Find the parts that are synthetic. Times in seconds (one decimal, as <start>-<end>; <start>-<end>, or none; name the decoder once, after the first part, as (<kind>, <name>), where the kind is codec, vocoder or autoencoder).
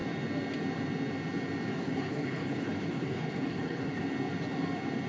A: 1.7-4.0 (codec, HILCodec)